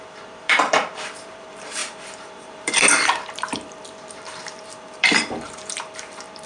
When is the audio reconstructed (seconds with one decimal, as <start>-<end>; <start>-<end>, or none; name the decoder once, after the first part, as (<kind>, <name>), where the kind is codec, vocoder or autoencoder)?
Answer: 0.0-6.5 (vocoder, BigVGAN v2)